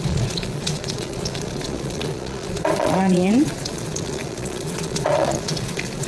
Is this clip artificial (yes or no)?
yes